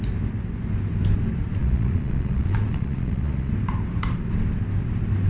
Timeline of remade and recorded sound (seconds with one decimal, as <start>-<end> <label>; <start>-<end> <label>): 0.0-1.6 recorded; 1.6-3.5 remade; 3.5-5.3 recorded